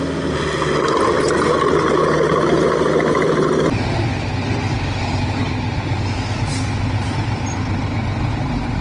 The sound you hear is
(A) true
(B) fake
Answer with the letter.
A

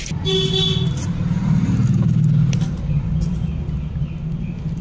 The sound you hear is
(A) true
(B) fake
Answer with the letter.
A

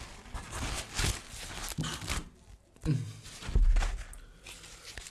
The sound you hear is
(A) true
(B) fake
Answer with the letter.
A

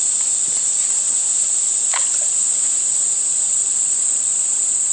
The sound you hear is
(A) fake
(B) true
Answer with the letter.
B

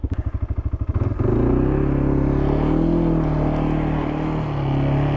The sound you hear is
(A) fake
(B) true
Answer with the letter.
B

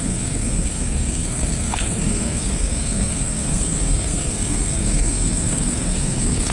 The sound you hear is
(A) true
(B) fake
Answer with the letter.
B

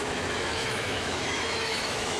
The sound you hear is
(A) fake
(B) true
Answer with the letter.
A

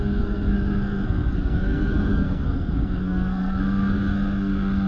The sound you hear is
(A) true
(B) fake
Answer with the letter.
B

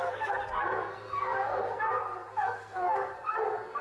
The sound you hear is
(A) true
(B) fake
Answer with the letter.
B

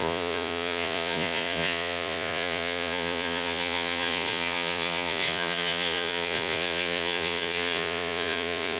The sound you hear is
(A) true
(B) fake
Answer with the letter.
B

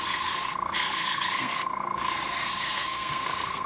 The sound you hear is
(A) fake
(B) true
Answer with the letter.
A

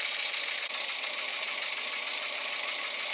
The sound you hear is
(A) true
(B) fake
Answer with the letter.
A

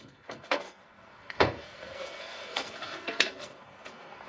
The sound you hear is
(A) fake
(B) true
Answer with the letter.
A